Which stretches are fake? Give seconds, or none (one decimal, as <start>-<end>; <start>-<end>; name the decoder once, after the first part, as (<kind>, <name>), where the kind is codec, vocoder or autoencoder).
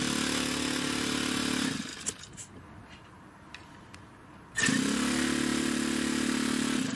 5.5-6.3 (vocoder, BigVGAN v2)